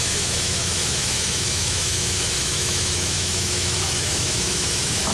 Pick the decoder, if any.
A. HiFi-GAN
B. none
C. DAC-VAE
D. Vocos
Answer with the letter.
C